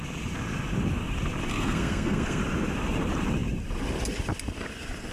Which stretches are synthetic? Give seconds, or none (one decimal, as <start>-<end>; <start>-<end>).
1.5-2.4